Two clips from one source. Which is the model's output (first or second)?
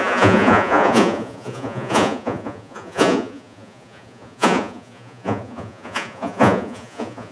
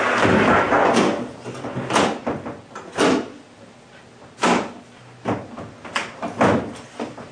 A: first